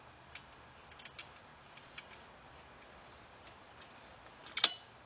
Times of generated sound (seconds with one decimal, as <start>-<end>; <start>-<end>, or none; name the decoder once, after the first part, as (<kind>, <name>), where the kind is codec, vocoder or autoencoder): none

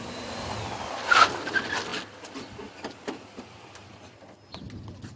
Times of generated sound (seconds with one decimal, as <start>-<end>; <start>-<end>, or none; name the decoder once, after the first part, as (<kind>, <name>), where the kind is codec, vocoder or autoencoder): none

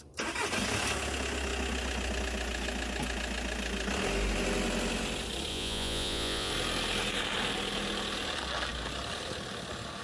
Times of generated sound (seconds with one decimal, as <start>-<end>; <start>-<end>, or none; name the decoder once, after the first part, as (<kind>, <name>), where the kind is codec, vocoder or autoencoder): 5.5-6.5 (vocoder, Vocos)

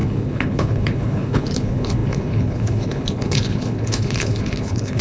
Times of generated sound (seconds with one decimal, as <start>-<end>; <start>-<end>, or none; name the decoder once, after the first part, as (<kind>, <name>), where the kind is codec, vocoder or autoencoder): 0.0-5.0 (codec, HILCodec)

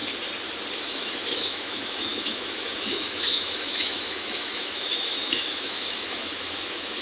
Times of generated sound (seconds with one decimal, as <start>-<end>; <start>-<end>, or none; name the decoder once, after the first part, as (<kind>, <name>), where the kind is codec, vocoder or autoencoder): 0.7-7.0 (autoencoder, DAC-VAE)

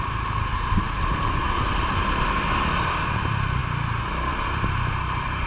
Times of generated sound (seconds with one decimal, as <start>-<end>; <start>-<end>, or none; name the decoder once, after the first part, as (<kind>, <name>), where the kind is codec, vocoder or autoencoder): 0.0-3.6 (vocoder, BigVGAN v2); 4.3-5.5